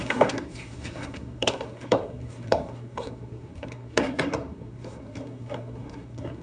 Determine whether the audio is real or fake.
fake